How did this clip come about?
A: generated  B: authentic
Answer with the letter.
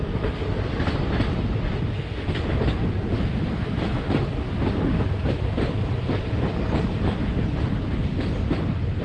B